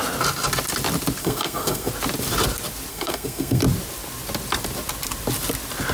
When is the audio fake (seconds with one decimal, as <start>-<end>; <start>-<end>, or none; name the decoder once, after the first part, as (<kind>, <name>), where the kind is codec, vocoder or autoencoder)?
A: 1.2-1.9 (codec, SNAC); 2.9-3.6